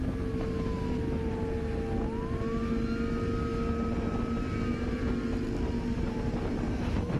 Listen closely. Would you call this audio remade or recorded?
recorded